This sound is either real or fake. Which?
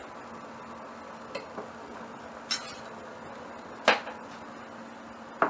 real